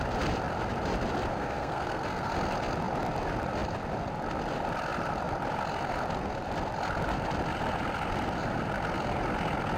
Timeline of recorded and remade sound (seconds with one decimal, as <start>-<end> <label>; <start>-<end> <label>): 0.0-1.3 recorded; 1.3-2.3 remade; 2.3-9.8 recorded